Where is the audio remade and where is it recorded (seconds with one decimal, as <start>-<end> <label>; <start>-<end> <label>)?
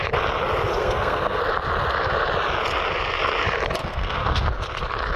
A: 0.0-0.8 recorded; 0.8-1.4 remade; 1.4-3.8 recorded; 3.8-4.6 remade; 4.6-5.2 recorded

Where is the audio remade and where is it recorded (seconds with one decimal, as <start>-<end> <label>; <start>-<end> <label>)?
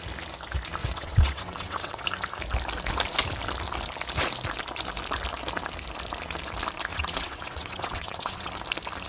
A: 0.0-0.8 recorded; 0.8-2.0 remade; 2.0-6.9 recorded; 6.9-8.5 remade; 8.5-9.1 recorded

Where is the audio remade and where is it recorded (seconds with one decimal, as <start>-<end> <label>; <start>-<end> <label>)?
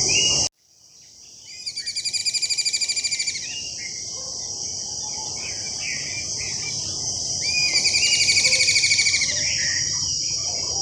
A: 0.0-10.8 recorded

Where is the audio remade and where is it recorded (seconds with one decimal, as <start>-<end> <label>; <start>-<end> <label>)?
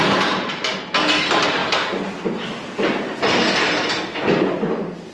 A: 0.0-5.1 recorded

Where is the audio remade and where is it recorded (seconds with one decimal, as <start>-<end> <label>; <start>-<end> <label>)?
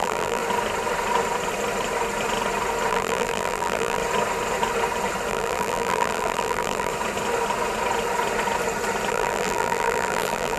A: 0.0-0.4 remade; 0.4-2.9 recorded; 2.9-4.0 remade; 4.0-5.3 recorded; 5.3-6.9 remade; 6.9-9.1 recorded; 9.1-10.6 remade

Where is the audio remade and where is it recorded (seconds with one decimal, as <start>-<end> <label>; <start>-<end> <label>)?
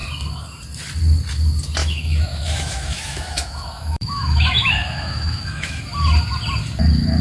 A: 0.0-1.8 recorded; 1.8-5.8 remade; 5.8-7.2 recorded